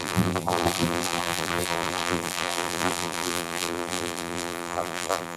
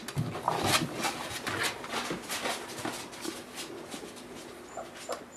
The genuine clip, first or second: second